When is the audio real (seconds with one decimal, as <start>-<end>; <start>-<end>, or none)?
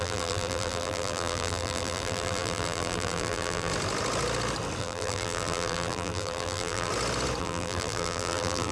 3.7-4.8; 6.9-7.4